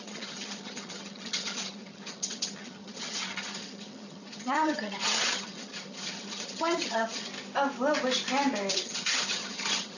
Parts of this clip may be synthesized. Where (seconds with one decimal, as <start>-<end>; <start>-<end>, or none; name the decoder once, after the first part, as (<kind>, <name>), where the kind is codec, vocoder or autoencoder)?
0.0-7.3 (vocoder, HiFi-GAN); 8.7-10.0